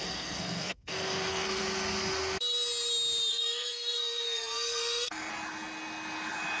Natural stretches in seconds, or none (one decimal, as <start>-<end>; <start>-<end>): 1.6-3.3; 5.3-6.6